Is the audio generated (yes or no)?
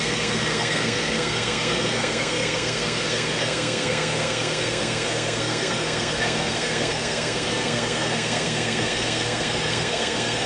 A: yes